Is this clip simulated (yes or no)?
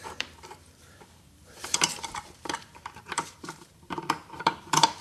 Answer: yes